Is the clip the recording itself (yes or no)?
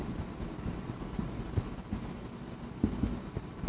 yes